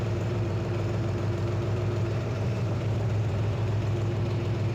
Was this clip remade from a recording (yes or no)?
yes